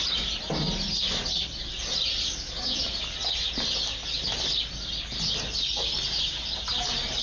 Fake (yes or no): no